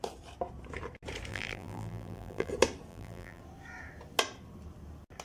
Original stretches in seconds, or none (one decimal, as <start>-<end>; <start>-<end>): 0.0-1.3; 2.5-2.9; 3.4-5.2